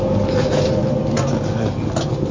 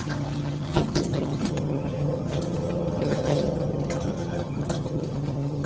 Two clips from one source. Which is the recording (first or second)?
first